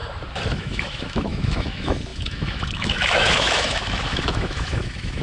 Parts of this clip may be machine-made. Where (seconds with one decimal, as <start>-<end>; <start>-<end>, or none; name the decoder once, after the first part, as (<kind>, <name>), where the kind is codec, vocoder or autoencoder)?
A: 0.5-5.2 (autoencoder, DAC-VAE)

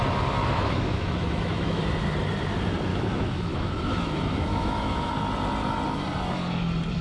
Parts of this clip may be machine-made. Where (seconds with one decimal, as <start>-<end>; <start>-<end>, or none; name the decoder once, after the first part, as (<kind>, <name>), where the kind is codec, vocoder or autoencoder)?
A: 0.4-1.8 (autoencoder, DAC-VAE); 2.9-5.1

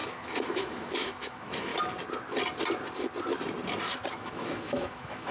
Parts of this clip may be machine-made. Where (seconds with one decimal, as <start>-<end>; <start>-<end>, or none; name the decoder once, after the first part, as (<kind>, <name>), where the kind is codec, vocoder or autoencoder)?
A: 0.0-1.7 (autoencoder, DAC-VAE); 4.1-5.3

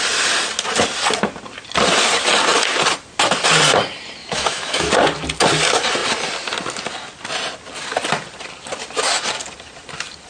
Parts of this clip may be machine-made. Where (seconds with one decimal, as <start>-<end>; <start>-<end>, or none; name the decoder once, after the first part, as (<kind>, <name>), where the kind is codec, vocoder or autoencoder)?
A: 4.2-4.9 (autoencoder, DAC-VAE)